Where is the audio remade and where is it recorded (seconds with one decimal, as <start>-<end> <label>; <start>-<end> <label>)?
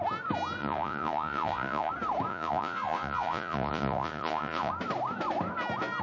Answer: 0.0-0.6 recorded; 0.6-1.9 remade; 1.9-2.3 recorded; 2.3-4.7 remade; 4.7-6.0 recorded